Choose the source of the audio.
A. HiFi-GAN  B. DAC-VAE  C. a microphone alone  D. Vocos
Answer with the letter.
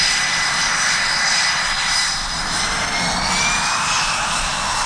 C